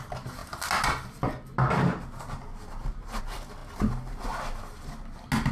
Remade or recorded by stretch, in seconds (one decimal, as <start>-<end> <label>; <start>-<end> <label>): 0.0-5.5 recorded